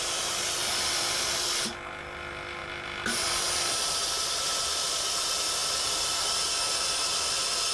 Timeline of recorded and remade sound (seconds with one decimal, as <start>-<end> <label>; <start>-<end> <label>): 0.0-7.7 recorded